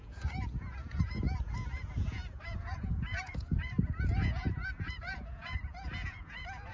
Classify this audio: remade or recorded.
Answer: remade